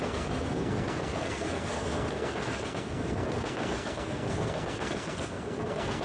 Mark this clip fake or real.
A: fake